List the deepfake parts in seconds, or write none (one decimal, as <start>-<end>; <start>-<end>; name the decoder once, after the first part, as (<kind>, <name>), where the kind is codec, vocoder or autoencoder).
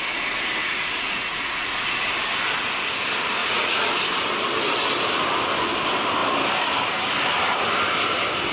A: 0.6-2.0 (vocoder, Vocos); 3.4-3.9